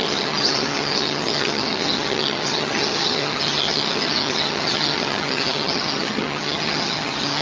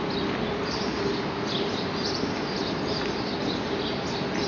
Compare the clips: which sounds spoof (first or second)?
first